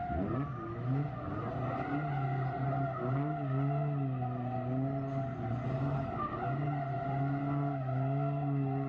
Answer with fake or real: real